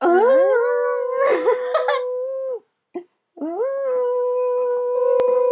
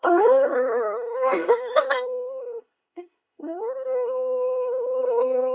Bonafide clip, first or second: first